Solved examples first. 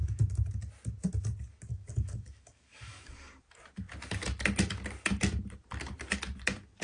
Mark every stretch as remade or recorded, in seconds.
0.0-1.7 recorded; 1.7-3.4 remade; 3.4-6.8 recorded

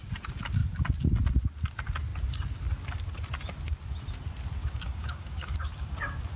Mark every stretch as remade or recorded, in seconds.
0.0-4.6 recorded; 4.6-6.4 remade

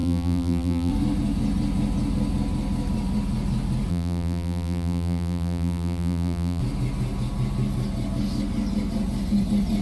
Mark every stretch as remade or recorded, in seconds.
0.0-0.9 remade; 0.9-3.9 recorded; 3.9-6.6 remade; 6.6-9.8 recorded